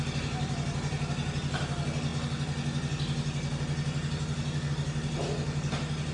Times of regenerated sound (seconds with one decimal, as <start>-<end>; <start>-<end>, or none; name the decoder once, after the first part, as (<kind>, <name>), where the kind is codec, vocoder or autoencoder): none